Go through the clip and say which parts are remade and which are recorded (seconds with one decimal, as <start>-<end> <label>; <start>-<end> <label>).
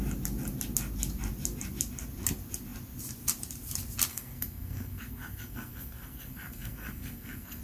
0.0-4.1 recorded; 4.1-7.6 remade